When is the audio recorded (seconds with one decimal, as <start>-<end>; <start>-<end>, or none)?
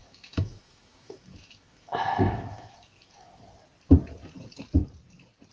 3.3-5.5